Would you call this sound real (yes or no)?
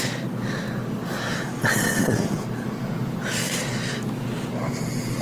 yes